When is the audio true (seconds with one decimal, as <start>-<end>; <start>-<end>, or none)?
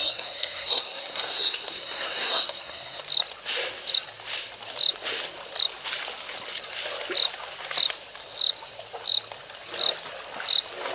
3.0-10.9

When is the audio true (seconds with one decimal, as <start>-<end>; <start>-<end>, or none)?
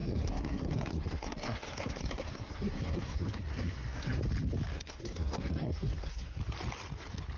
4.2-4.7; 6.4-7.4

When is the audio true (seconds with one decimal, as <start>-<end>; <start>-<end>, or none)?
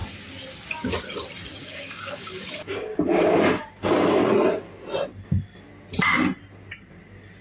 0.0-1.6; 3.4-7.4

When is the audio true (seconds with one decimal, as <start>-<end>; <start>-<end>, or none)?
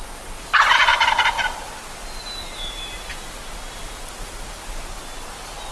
0.0-5.7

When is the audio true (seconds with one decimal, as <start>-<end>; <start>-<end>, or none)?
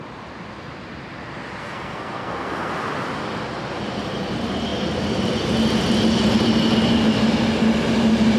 0.0-1.6; 2.7-8.4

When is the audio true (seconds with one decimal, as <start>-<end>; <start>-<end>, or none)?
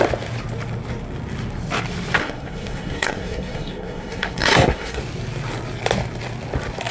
0.0-2.2; 5.0-6.9